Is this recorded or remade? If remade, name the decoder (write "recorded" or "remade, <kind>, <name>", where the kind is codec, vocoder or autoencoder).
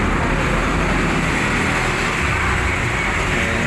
recorded